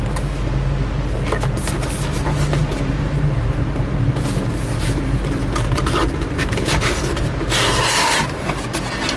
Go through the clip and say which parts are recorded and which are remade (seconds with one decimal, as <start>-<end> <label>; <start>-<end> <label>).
0.0-2.6 recorded; 2.6-7.4 remade; 7.4-9.2 recorded